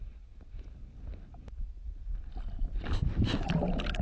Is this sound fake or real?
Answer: real